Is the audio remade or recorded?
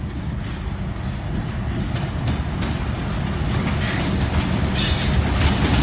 recorded